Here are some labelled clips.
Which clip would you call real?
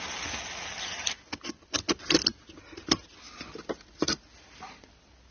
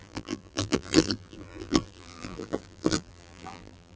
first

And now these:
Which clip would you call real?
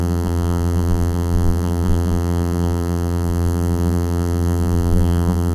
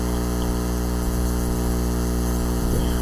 second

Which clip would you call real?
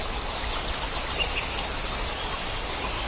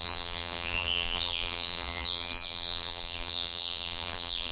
first